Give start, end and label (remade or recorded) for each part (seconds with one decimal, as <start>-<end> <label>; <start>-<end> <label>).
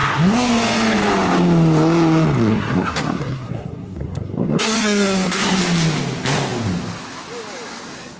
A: 0.0-0.5 remade; 0.5-2.5 recorded; 2.5-5.6 remade; 5.6-8.2 recorded